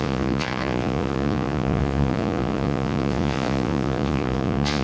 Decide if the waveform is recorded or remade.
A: remade